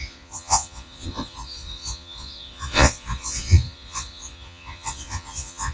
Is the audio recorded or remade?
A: remade